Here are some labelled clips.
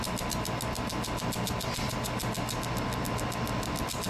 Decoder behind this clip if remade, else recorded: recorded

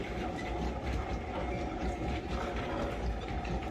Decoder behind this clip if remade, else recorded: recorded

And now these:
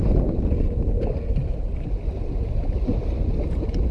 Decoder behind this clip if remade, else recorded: recorded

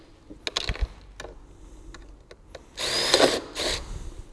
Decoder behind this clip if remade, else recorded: recorded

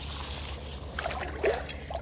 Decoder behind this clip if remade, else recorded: recorded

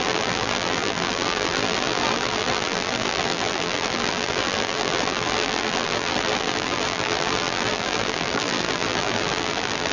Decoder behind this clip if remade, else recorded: remade, vocoder, BigVGAN v2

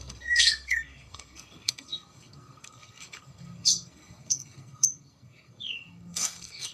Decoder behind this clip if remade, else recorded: remade, codec, SNAC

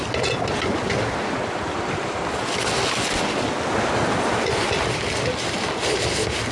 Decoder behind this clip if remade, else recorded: recorded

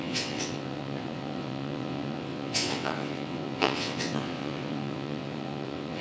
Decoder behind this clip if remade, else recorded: remade, vocoder, WaveNeXt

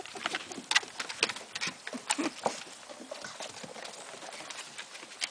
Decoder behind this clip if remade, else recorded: recorded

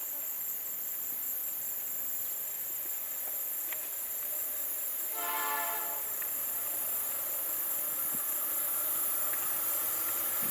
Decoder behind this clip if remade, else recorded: recorded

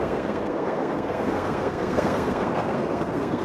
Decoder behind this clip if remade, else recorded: remade, codec, SNAC